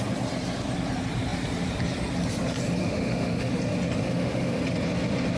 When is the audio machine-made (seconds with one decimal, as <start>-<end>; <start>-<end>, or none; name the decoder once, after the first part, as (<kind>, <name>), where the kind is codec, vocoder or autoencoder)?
2.8-3.5 (autoencoder, DAC-VAE); 4.0-4.6